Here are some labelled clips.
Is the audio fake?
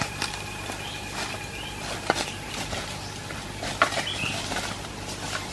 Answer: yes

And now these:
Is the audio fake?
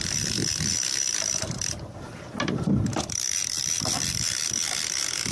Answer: yes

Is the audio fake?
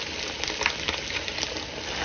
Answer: no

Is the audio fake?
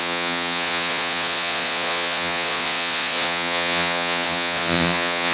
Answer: yes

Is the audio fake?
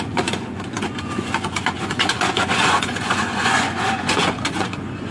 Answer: yes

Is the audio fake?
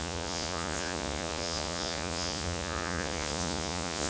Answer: yes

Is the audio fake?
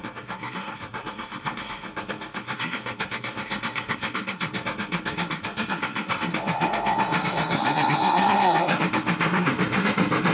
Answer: yes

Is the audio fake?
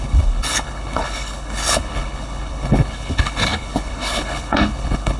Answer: yes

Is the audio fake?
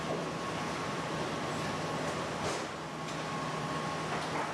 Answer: no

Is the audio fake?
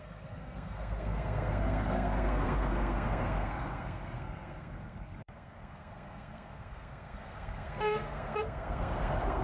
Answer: yes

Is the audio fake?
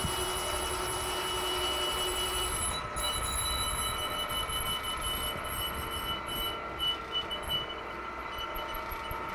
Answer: no